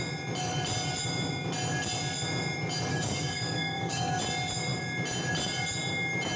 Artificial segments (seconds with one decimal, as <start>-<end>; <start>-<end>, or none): 2.9-4.2